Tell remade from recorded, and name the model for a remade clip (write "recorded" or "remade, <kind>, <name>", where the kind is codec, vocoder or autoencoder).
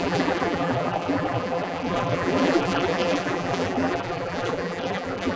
remade, vocoder, BigVGAN v2